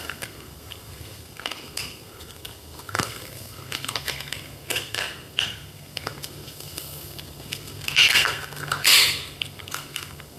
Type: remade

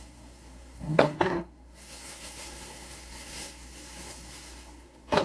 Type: remade